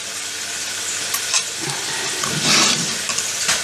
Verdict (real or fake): real